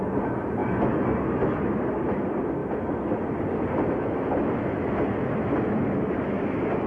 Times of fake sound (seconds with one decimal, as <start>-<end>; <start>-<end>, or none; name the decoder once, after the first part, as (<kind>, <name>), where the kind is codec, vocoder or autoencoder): none